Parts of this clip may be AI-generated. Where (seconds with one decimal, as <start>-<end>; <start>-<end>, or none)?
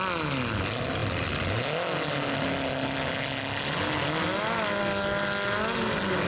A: none